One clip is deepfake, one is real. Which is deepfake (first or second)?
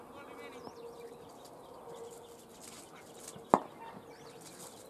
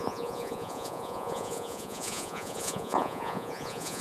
second